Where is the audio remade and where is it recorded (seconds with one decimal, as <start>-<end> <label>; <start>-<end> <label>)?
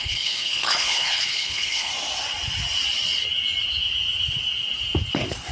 0.0-1.9 remade; 1.9-5.5 recorded